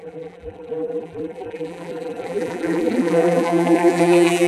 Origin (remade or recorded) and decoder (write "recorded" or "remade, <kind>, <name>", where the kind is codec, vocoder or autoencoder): remade, vocoder, BigVGAN v2